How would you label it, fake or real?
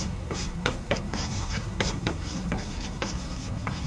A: fake